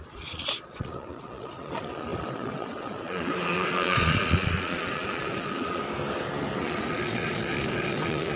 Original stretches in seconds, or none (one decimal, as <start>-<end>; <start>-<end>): 5.8-6.6